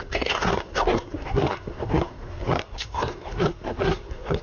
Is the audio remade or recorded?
remade